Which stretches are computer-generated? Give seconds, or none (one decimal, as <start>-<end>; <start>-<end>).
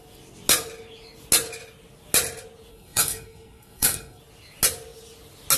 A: 2.7-4.2